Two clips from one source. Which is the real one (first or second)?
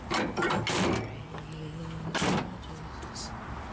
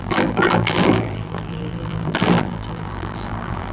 first